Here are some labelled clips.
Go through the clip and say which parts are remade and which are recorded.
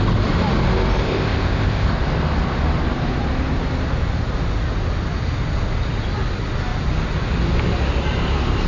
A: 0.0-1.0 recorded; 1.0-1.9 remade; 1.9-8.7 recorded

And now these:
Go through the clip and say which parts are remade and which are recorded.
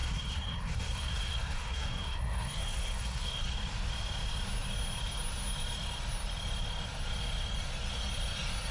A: 0.0-3.5 remade; 3.5-8.7 recorded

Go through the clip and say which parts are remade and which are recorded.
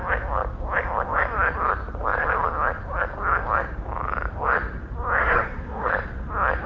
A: 0.0-5.2 recorded; 5.2-5.9 remade; 5.9-6.7 recorded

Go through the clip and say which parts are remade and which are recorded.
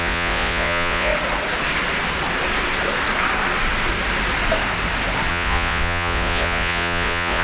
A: 0.0-1.1 remade; 1.1-5.3 recorded; 5.3-7.4 remade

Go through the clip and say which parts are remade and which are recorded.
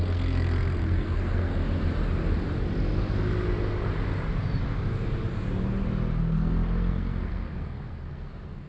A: 0.0-1.6 remade; 1.6-6.2 recorded; 6.2-8.7 remade